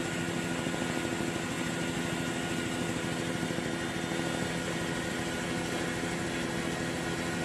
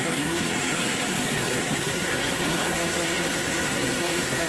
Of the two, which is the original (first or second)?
first